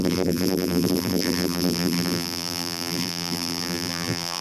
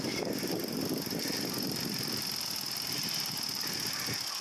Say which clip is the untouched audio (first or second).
second